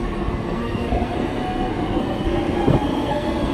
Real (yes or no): no